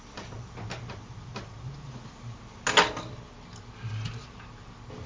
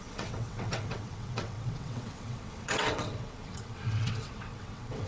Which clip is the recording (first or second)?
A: first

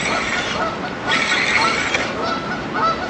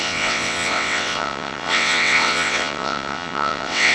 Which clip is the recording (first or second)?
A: first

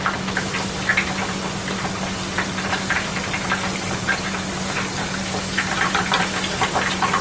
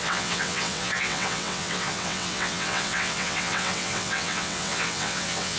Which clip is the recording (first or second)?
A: first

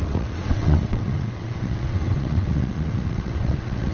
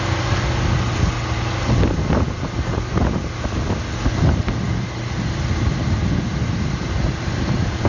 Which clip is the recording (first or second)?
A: second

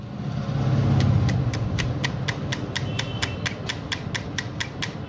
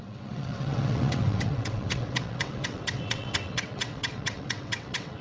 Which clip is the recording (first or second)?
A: first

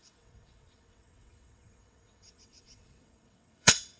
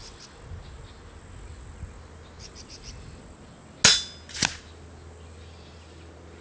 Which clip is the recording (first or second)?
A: second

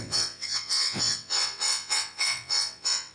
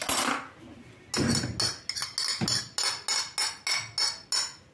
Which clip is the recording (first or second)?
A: second